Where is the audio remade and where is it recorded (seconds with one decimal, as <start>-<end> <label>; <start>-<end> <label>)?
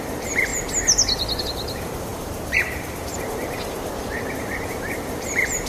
0.0-0.5 remade; 0.5-1.4 recorded; 1.4-5.7 remade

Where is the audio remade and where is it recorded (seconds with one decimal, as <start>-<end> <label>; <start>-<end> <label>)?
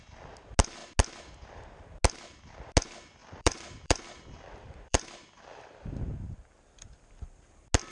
0.0-3.2 recorded; 3.2-6.0 remade; 6.0-7.9 recorded